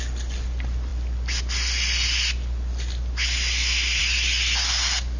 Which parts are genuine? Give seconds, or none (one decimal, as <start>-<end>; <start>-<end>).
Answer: 0.0-5.2

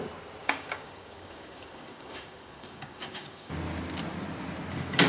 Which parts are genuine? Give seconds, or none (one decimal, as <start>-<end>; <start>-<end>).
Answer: 0.0-0.4; 3.5-5.1

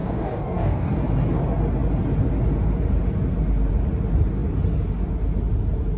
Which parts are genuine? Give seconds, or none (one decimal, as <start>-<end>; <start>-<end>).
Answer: 1.0-6.0

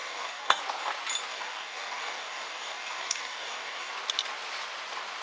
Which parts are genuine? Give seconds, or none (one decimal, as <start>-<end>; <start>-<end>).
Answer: 0.6-1.3; 3.9-5.2

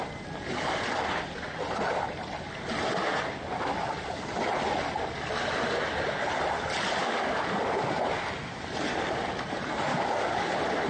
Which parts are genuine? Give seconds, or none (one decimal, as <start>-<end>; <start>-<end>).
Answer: 0.0-7.0; 7.9-9.9; 10.5-10.9